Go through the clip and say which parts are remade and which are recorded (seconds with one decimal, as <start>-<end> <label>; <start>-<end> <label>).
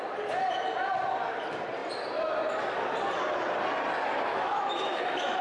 0.0-4.3 recorded; 4.3-5.4 remade